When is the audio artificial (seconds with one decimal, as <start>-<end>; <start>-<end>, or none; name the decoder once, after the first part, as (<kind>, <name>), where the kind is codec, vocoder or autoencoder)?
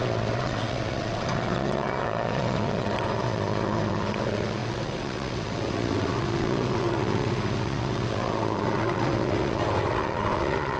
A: 0.0-10.8 (vocoder, WaveNeXt)